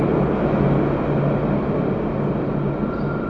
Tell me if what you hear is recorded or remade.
recorded